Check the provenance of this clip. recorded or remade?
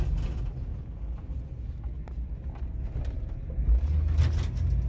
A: recorded